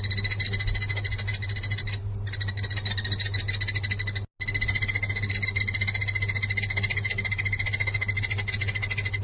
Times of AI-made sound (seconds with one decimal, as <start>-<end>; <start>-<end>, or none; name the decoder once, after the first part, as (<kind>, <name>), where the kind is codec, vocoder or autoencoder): none